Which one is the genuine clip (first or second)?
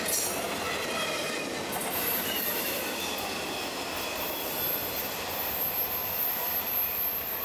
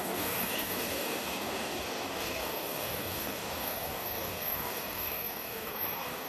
first